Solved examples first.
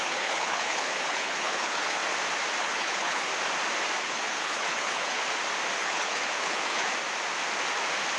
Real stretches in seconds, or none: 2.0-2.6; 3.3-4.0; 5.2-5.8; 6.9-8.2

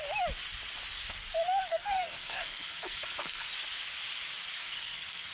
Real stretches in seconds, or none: 0.0-1.7; 3.5-4.6

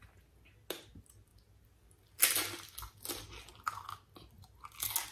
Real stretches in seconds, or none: 0.0-5.1

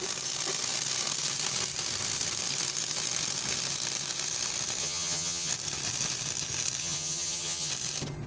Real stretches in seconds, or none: 0.0-4.8; 5.5-6.8; 7.7-8.3

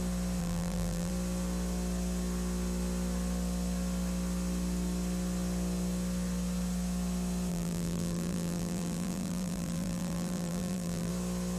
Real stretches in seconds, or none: 0.0-0.4; 1.1-7.5; 11.1-11.6

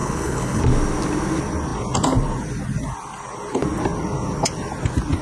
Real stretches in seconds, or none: 0.6-5.2

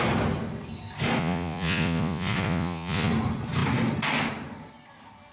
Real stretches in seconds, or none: 0.0-1.2; 3.1-5.3

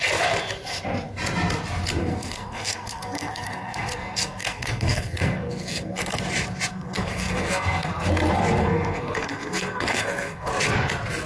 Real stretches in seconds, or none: 0.0-2.0; 6.2-6.7; 7.9-8.6; 10.5-11.3